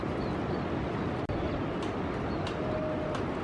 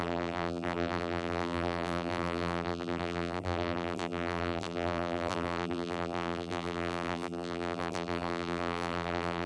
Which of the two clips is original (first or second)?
first